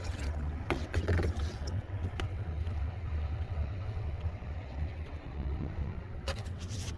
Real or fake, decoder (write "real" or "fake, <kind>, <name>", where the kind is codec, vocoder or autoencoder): fake, vocoder, WaveNeXt